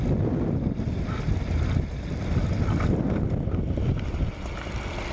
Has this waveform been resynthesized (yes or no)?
no